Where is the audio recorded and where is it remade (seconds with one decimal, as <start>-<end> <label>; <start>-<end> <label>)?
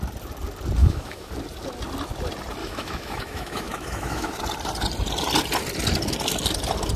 0.0-0.8 recorded; 0.8-1.3 remade; 1.3-2.6 recorded; 2.6-4.4 remade; 4.4-7.0 recorded